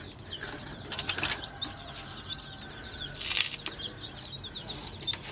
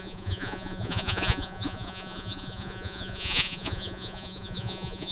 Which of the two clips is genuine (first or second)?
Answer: first